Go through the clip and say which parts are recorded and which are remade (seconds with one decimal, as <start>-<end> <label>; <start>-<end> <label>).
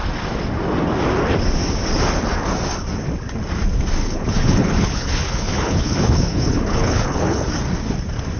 0.0-4.0 recorded; 4.0-7.5 remade; 7.5-8.4 recorded